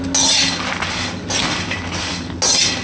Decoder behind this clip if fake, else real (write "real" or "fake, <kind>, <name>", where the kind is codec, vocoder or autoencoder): real